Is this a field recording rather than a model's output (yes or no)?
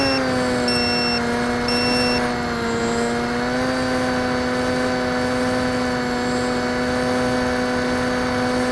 yes